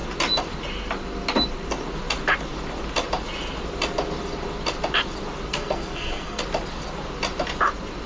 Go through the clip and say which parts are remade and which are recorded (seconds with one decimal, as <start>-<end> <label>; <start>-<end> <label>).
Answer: 0.0-5.5 recorded; 5.5-6.4 remade; 6.4-8.1 recorded